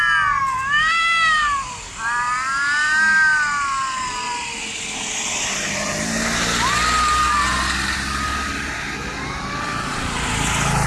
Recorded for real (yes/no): yes